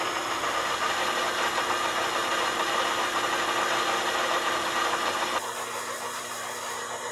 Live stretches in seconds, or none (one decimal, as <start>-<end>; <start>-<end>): 0.0-7.1